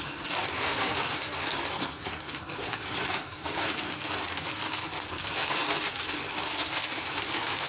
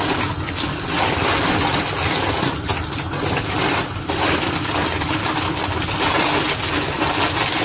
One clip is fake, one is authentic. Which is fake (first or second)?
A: first